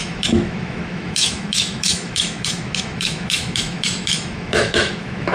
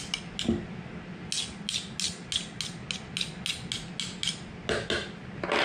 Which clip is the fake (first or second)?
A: first